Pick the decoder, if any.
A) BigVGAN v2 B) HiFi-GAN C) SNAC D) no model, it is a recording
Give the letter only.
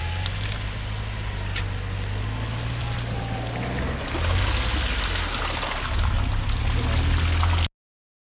D